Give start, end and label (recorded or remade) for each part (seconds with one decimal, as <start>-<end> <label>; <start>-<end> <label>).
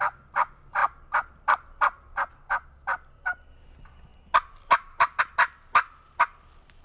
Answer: 0.0-6.8 recorded